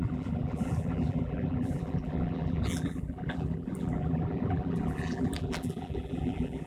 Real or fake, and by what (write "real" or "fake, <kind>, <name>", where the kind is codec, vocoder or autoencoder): fake, vocoder, BigVGAN v2